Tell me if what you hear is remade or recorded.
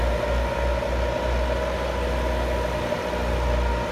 recorded